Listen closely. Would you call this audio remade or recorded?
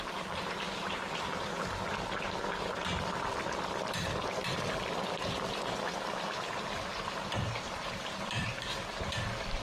recorded